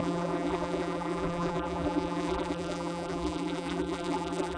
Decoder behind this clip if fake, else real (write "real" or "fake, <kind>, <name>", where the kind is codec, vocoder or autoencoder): fake, vocoder, BigVGAN v2